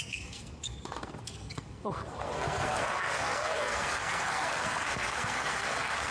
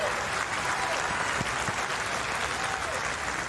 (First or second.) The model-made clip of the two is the first